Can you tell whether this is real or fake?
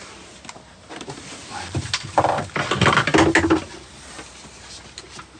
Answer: real